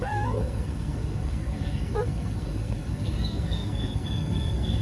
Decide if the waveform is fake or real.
fake